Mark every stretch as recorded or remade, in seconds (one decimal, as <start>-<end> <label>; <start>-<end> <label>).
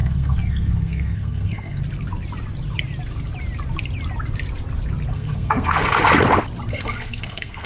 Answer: 0.0-1.8 remade; 1.8-5.1 recorded; 5.1-6.0 remade; 6.0-6.7 recorded; 6.7-7.7 remade